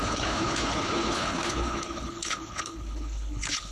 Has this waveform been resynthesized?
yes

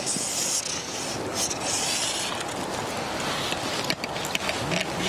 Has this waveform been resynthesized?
no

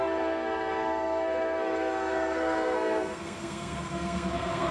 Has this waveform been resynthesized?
yes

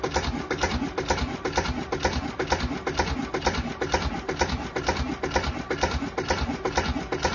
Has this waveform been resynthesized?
no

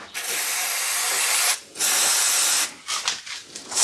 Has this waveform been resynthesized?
no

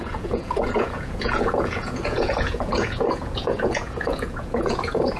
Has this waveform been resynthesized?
yes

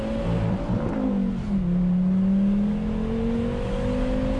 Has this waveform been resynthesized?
no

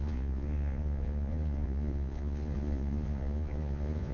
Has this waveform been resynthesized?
yes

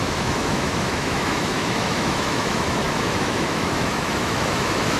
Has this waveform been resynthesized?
yes